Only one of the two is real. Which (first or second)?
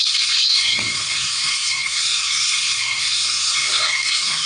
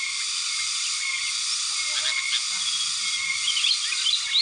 second